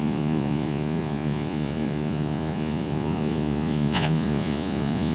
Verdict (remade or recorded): remade